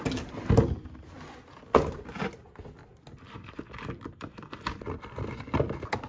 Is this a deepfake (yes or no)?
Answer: no